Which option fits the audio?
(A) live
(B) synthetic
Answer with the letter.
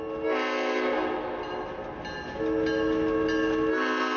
A